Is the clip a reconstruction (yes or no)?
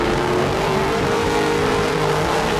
yes